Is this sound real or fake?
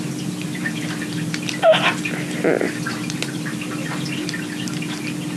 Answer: real